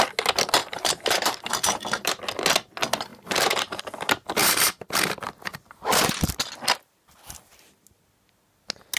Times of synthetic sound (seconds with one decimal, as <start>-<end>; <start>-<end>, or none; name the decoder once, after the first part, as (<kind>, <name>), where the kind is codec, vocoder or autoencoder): 0.6-2.2 (vocoder, BigVGAN v2); 3.1-3.8; 4.4-5.0; 5.5-6.4